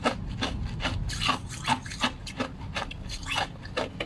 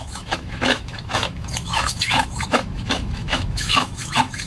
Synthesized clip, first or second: second